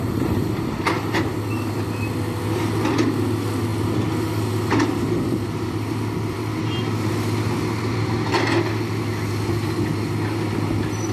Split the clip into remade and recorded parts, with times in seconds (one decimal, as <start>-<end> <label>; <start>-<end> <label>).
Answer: 0.0-11.1 recorded